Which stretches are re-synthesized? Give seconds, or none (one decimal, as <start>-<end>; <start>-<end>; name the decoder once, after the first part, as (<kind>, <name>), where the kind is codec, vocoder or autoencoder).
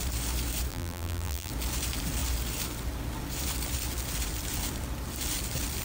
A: 0.7-1.5 (vocoder, BigVGAN v2)